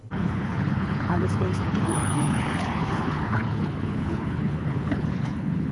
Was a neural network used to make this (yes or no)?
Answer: yes